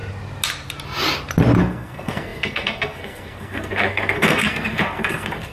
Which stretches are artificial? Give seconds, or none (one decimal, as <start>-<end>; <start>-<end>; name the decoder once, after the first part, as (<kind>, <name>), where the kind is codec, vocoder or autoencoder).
1.6-5.5 (codec, SNAC)